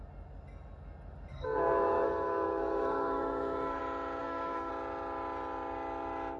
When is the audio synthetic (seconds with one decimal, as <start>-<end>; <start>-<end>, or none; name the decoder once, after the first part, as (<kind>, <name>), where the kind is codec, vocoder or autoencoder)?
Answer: 1.3-3.8 (codec, SNAC); 4.2-4.7